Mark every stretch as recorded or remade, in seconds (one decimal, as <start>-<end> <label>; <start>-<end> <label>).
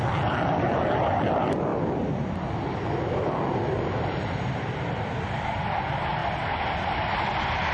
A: 0.0-7.7 recorded